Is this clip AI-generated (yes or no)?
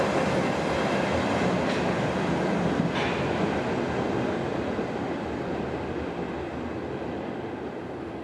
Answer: no